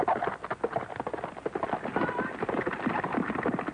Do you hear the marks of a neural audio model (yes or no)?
no